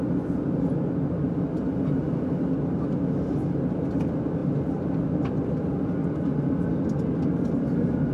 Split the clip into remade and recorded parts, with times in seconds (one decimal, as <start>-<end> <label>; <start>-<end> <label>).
0.0-8.1 recorded